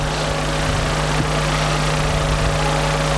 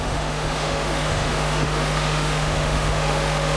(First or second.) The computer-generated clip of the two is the second